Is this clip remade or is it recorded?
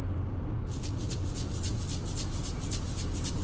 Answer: recorded